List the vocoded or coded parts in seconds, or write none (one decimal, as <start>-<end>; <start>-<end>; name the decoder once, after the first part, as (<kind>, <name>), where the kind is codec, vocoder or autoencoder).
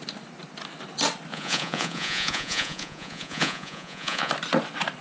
1.3-4.3 (vocoder, Vocos)